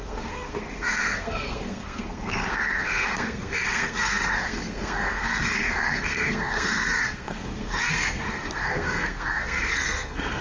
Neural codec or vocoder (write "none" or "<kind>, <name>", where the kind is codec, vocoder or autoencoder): codec, SNAC